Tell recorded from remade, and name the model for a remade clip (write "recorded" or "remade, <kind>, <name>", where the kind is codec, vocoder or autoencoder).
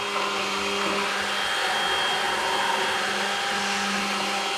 recorded